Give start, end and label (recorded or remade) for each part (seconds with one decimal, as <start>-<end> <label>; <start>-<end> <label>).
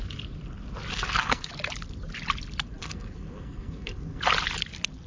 0.0-0.9 recorded; 0.9-1.5 remade; 1.5-2.8 recorded; 2.8-4.2 remade; 4.2-5.1 recorded